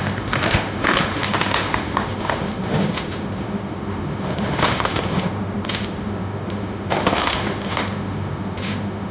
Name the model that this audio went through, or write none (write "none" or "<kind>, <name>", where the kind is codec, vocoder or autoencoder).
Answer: autoencoder, DAC-VAE